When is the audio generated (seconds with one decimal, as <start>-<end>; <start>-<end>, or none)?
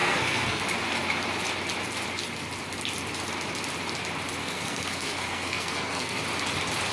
0.0-0.6; 4.4-6.2